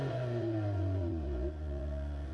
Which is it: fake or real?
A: fake